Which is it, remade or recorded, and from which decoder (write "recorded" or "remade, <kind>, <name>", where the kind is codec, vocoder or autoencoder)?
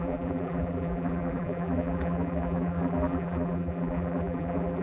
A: remade, vocoder, BigVGAN v2